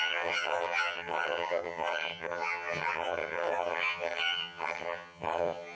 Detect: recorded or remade remade